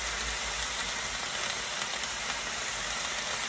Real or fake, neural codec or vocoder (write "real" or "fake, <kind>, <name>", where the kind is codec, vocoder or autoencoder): real